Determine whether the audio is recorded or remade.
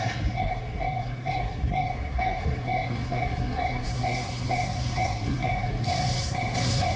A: remade